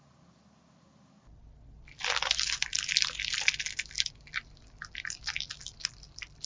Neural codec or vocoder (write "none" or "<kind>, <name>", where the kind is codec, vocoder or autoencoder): none